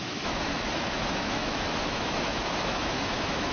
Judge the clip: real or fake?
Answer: fake